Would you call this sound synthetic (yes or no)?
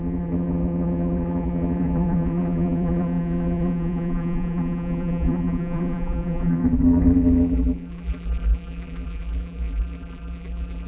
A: yes